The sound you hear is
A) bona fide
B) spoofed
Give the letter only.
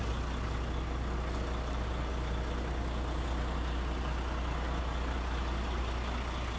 A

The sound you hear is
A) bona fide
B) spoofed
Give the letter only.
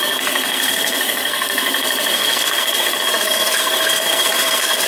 B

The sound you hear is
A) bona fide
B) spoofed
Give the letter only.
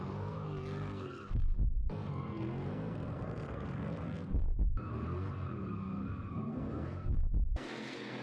B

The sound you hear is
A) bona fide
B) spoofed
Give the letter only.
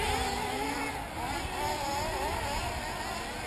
A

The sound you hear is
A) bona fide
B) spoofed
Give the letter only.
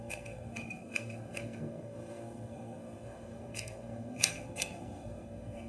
B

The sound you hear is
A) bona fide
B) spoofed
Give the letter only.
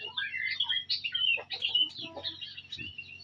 A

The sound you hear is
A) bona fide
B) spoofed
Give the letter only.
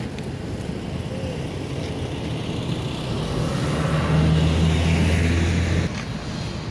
A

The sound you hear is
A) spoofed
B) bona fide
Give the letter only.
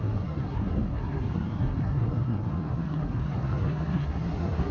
A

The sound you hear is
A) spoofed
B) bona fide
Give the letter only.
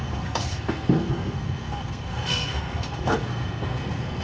A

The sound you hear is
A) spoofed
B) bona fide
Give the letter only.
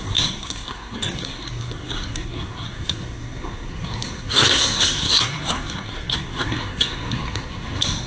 A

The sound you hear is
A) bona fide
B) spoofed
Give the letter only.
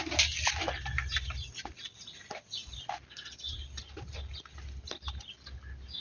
A